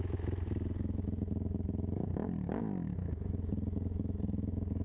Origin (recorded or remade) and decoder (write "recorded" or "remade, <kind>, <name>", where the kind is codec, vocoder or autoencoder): remade, autoencoder, DAC-VAE